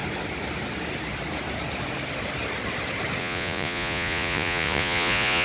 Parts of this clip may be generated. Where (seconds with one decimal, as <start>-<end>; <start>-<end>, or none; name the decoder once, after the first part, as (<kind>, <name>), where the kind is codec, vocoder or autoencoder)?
3.2-5.4 (vocoder, Vocos)